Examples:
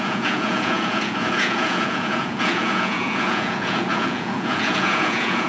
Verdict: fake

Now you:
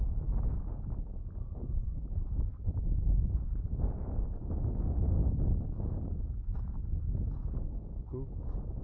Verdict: real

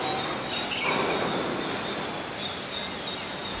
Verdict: real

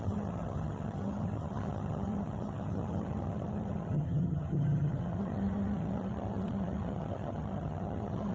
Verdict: fake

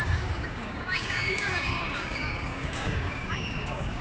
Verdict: fake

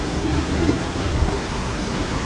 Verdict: fake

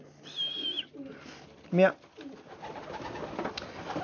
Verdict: real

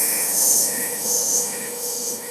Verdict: fake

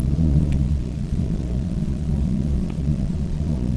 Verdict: fake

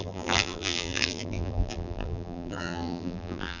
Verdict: fake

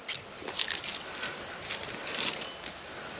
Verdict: real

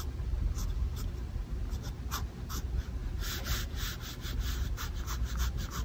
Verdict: real